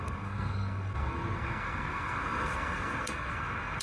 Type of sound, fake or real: fake